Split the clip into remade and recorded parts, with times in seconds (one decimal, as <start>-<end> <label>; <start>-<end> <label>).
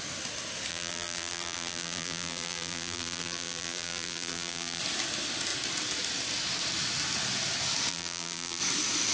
0.0-0.7 recorded; 0.7-4.8 remade; 4.8-7.9 recorded; 7.9-8.6 remade; 8.6-9.1 recorded